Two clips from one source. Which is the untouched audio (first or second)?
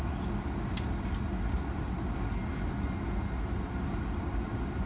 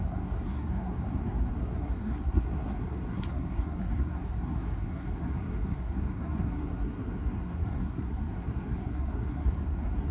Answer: first